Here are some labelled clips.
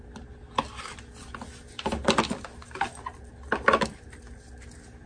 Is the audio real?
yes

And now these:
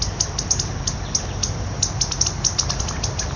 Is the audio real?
yes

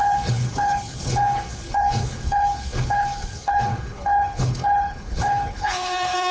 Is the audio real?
no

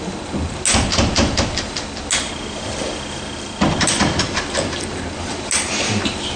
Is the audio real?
yes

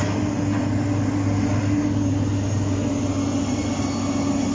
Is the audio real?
yes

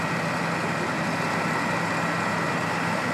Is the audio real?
yes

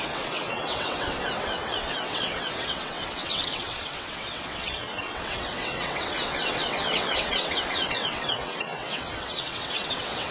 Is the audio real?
no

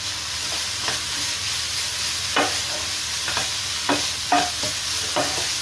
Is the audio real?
yes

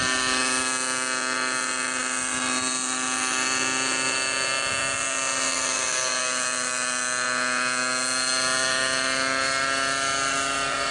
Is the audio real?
yes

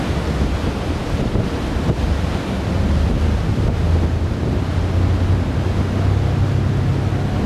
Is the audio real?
yes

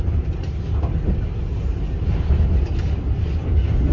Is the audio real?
yes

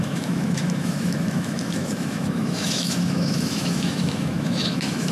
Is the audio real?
no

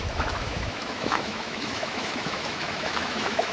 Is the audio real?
no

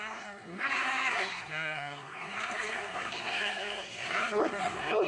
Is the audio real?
no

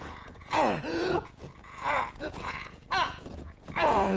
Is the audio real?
no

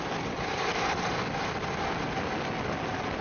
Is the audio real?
yes